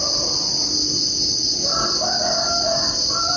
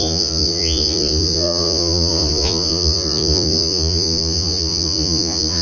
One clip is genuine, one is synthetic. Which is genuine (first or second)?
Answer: first